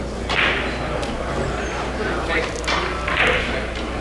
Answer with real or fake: real